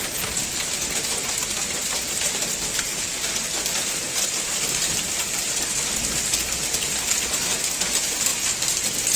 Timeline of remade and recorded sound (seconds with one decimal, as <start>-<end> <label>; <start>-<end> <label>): 0.0-2.9 recorded; 2.9-6.2 remade; 6.2-9.2 recorded